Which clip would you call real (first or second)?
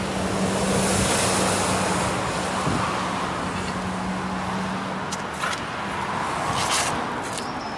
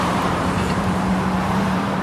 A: first